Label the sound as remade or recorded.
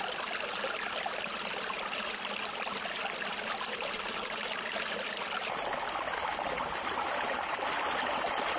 recorded